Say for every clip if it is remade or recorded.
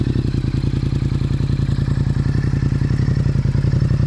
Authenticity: recorded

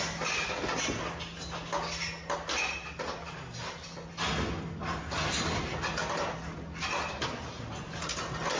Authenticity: recorded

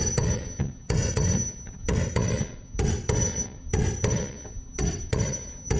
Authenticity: remade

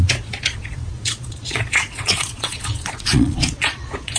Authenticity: remade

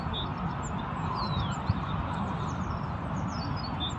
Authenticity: recorded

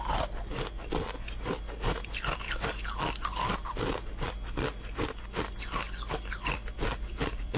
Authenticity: recorded